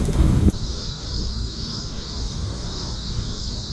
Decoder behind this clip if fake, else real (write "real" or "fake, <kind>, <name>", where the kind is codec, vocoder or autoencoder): fake, codec, DAC